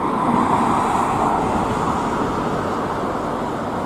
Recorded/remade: recorded